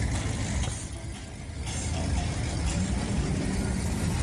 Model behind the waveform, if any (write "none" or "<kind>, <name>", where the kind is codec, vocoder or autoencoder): none